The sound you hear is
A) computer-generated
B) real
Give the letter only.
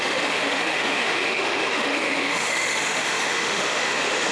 A